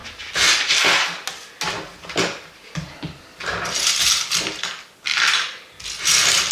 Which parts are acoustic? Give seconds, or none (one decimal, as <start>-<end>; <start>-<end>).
0.0-5.1; 5.8-6.5